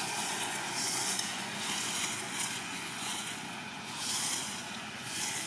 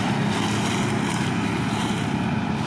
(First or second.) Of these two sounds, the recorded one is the second